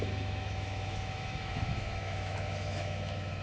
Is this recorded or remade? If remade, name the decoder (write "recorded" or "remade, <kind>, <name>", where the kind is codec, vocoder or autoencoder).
remade, autoencoder, DAC-VAE